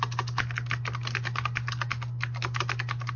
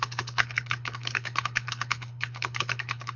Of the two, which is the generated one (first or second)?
second